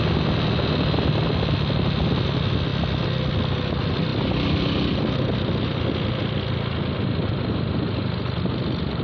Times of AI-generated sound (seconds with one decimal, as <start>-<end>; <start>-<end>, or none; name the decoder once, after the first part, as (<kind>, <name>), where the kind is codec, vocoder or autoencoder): none